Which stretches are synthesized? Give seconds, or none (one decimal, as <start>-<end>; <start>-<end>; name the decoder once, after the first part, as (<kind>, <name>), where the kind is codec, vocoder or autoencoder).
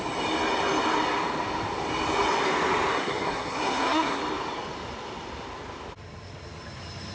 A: 2.9-4.2 (codec, SNAC)